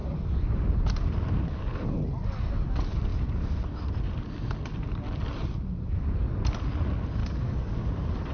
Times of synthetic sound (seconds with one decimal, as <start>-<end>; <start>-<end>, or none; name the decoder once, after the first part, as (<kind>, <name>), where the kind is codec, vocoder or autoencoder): 7.2-7.9 (codec, DAC)